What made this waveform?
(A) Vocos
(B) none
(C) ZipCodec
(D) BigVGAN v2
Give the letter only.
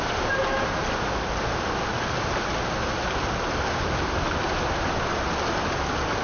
B